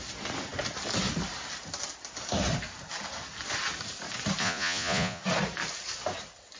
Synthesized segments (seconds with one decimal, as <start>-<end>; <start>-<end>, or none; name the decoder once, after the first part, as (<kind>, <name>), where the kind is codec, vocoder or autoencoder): 4.4-5.2 (vocoder, Vocos)